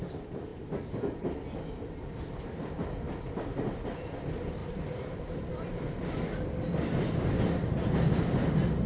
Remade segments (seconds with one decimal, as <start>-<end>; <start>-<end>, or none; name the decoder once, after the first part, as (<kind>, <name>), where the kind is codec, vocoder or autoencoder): 4.6-5.5 (vocoder, BigVGAN v2)